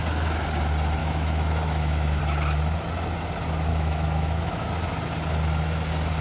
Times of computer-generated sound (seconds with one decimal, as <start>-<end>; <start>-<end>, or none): 1.0-2.2; 3.7-4.7